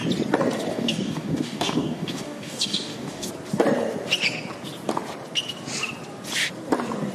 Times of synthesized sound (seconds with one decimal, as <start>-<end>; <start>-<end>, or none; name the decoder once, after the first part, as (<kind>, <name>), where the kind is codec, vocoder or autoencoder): 0.7-3.3 (codec, DAC)